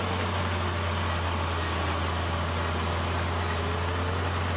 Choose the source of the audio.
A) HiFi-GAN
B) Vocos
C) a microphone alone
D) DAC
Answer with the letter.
C